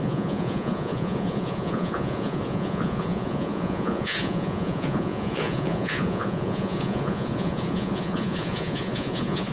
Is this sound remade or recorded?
remade